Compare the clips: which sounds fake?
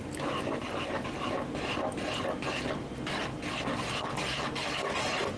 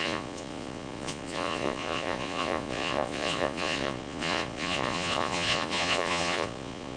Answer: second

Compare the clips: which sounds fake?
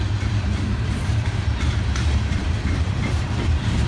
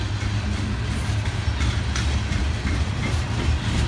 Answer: first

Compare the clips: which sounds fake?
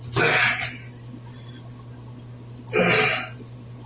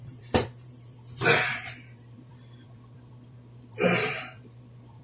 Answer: second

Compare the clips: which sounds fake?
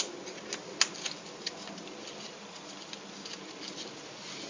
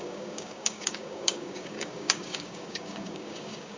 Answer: second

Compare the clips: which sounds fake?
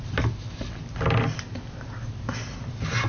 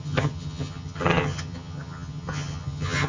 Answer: second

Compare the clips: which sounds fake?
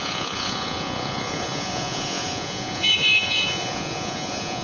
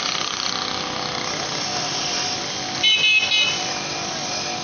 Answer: first